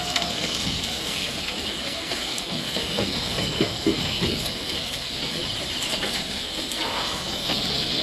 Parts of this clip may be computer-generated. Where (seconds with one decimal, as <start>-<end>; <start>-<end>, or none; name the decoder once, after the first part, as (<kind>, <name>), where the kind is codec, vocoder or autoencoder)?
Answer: 0.0-5.4 (codec, SNAC); 5.9-8.0